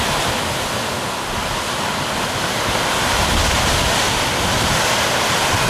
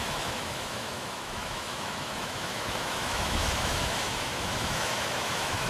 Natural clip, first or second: first